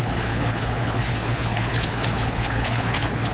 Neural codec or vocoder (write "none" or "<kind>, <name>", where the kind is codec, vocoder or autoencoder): codec, HILCodec